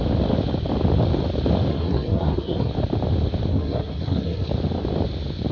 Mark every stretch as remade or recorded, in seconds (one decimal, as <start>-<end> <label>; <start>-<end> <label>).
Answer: 0.0-1.7 recorded; 1.7-2.7 remade; 2.7-3.5 recorded; 3.5-4.5 remade; 4.5-5.5 recorded